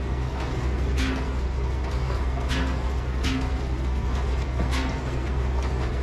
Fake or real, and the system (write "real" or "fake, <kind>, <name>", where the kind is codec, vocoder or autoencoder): fake, codec, SNAC